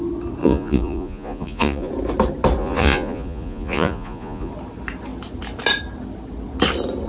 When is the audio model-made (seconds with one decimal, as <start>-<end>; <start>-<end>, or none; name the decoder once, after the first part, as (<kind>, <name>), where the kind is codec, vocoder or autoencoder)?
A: 0.4-1.9 (vocoder, Vocos); 2.6-4.5